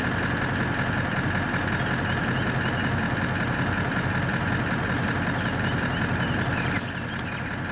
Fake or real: real